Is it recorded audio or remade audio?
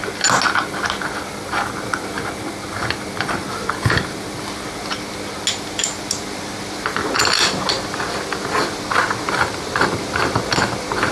recorded